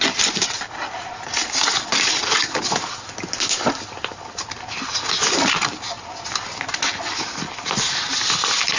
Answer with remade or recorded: recorded